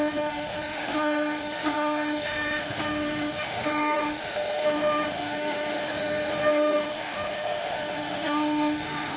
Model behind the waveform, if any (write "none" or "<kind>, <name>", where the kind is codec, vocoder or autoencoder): autoencoder, DAC-VAE